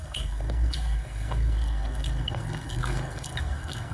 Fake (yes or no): yes